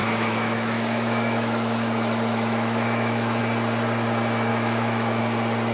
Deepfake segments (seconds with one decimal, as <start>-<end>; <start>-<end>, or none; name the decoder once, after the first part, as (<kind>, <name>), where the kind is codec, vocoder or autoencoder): 0.0-3.4 (autoencoder, DAC-VAE); 4.5-5.2